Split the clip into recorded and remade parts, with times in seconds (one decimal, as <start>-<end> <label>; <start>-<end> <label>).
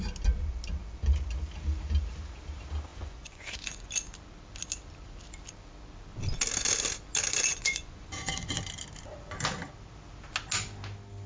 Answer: 0.0-2.9 recorded; 2.9-3.9 remade; 3.9-7.5 recorded; 7.5-8.6 remade; 8.6-11.3 recorded